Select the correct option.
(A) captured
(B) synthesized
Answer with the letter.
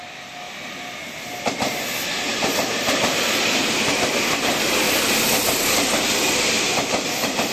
A